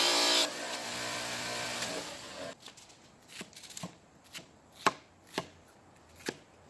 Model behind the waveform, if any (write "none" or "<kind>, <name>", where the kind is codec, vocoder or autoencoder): none